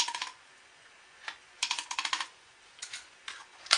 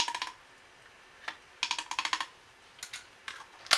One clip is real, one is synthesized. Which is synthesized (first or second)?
first